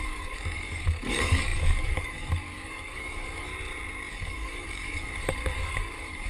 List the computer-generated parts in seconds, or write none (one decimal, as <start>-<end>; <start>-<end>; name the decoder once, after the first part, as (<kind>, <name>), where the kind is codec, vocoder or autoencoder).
0.0-3.5 (codec, DAC); 4.1-6.3